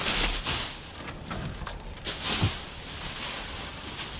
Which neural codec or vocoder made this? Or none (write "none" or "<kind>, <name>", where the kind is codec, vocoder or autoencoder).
none